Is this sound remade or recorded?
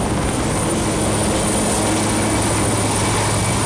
recorded